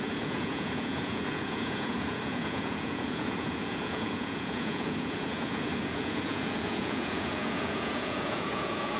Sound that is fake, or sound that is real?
fake